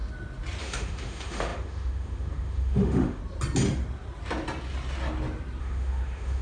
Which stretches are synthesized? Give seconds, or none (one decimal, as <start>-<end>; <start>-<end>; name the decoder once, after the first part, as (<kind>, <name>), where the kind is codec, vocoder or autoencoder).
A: 0.6-3.2 (autoencoder, DAC-VAE); 5.6-6.4